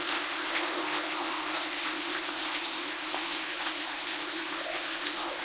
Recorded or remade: remade